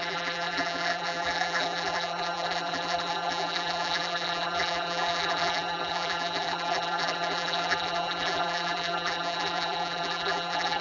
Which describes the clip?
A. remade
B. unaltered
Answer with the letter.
A